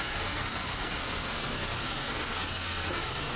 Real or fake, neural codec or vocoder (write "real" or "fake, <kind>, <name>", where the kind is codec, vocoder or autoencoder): fake, codec, SNAC